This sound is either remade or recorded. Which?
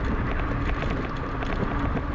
recorded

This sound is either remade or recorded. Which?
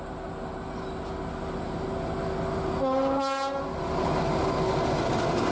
recorded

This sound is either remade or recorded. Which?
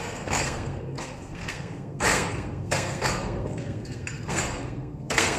remade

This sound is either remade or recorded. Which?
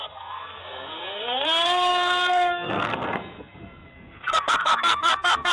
remade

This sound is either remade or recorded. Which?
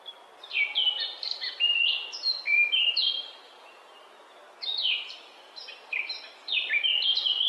recorded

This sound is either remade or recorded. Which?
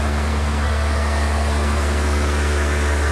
remade